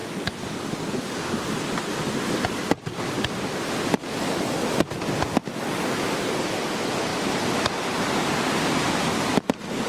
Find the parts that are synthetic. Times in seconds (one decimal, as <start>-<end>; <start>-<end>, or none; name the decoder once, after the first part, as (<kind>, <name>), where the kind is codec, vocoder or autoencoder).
0.0-4.0 (vocoder, BigVGAN v2); 7.1-8.0